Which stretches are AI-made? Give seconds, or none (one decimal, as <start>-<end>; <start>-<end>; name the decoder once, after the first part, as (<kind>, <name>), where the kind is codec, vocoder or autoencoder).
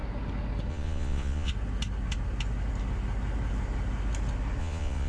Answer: 0.7-1.5 (vocoder, Vocos); 4.6-5.1